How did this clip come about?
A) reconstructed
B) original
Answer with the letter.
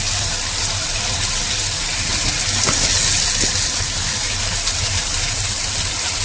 B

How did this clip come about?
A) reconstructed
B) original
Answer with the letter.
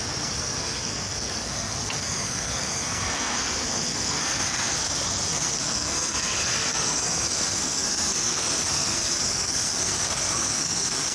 A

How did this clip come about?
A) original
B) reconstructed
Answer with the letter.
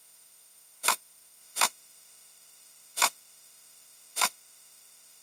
B